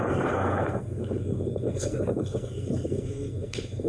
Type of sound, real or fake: fake